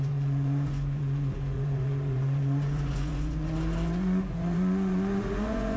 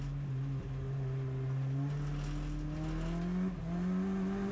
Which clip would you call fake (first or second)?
first